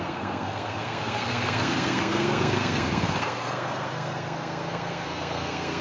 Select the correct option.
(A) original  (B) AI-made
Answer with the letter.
B